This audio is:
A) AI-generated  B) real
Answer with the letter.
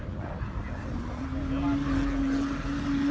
B